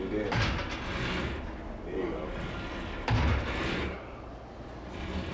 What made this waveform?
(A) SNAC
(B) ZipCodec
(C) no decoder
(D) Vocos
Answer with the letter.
C